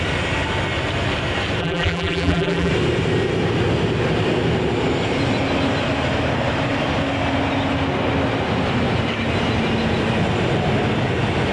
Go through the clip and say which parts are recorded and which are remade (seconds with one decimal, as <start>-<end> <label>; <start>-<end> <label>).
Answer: 0.0-1.6 recorded; 1.6-2.7 remade; 2.7-11.5 recorded